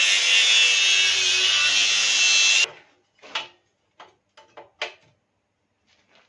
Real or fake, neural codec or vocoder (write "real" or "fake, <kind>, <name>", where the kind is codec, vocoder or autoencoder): real